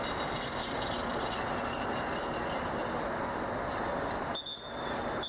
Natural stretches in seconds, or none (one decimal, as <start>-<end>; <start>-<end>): 0.0-5.3